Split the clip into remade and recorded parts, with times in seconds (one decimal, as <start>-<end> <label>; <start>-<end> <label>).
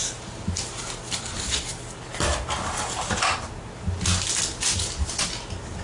0.0-5.8 recorded